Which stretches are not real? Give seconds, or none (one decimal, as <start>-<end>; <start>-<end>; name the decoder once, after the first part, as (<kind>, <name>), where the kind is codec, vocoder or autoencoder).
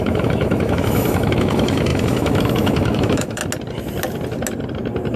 0.0-3.4 (autoencoder, DAC-VAE)